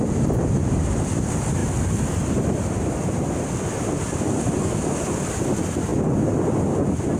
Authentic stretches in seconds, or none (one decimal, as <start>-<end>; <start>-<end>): 0.0-1.6; 5.4-7.2